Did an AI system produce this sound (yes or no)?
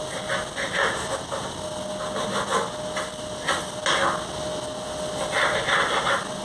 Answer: no